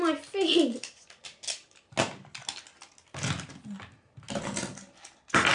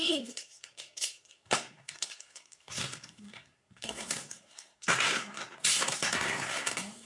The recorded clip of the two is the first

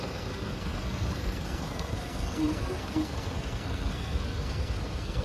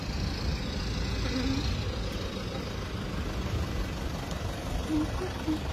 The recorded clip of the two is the second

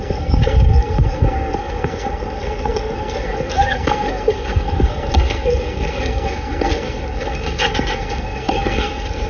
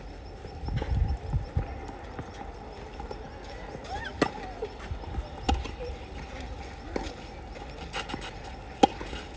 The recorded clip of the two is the second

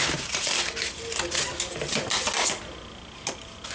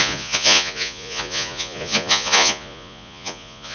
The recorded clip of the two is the first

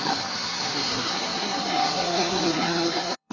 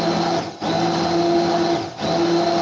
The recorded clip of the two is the second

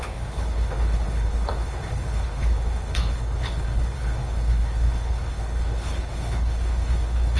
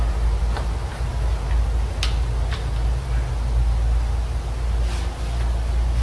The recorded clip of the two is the second